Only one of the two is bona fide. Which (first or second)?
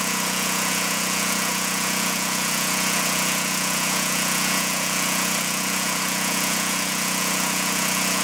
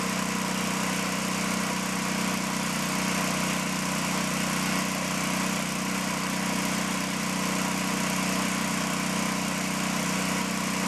second